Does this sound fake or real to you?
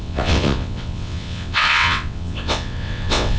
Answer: fake